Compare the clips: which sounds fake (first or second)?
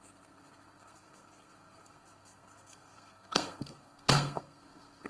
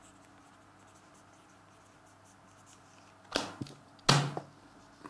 first